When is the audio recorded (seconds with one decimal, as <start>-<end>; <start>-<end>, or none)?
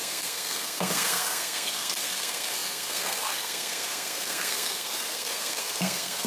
none